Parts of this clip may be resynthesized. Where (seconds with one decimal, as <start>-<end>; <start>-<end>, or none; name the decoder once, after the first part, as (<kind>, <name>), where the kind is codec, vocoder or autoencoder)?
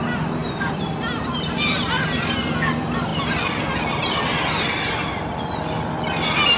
0.4-1.0 (vocoder, BigVGAN v2)